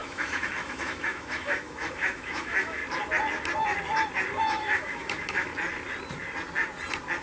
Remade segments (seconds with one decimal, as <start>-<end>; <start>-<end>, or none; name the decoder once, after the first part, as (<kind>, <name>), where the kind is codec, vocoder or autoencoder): 0.0-2.8 (autoencoder, DAC-VAE); 4.4-5.5